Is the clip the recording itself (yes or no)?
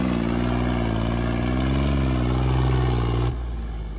yes